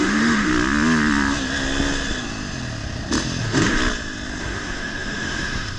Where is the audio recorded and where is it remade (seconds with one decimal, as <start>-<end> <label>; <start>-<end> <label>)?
0.0-0.5 remade; 0.5-3.4 recorded; 3.4-3.8 remade; 3.8-4.4 recorded; 4.4-5.8 remade